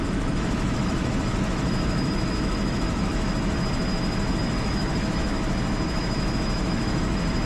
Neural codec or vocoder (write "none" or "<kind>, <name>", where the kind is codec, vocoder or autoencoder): autoencoder, DAC-VAE